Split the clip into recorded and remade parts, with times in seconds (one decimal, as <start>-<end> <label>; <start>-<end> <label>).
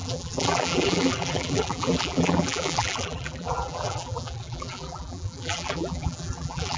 0.0-6.8 remade